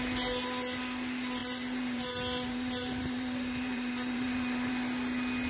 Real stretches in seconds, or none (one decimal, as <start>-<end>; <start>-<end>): 0.0-1.4; 4.7-5.5